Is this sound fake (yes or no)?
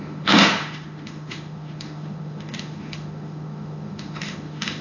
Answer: yes